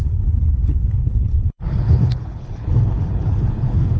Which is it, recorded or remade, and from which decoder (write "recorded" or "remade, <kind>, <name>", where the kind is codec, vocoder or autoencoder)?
remade, codec, HILCodec